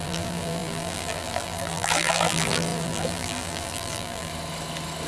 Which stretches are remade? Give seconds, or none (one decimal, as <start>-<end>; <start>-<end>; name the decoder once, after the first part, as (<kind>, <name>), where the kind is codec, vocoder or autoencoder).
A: 0.0-4.3 (vocoder, BigVGAN v2)